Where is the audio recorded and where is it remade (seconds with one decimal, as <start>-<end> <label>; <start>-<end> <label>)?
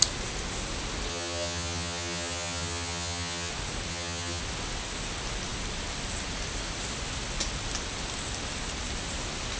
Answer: 0.0-1.1 recorded; 1.1-3.5 remade; 3.5-3.9 recorded; 3.9-4.4 remade; 4.4-9.6 recorded